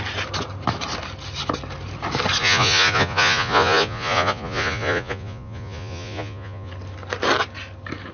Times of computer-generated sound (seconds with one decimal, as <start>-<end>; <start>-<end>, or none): 2.4-6.7